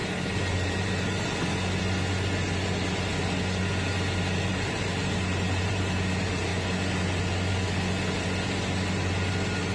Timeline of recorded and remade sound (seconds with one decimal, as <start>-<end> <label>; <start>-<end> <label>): 0.0-1.8 remade; 1.8-4.5 recorded; 4.5-5.8 remade; 5.8-9.7 recorded